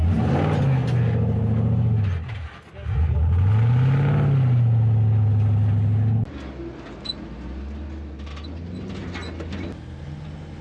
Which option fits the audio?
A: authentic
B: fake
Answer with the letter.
A